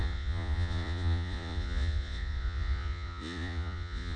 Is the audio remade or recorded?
remade